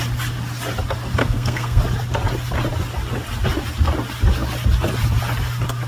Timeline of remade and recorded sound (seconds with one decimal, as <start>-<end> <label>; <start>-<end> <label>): 0.0-1.2 recorded; 1.2-1.8 remade; 1.8-5.9 recorded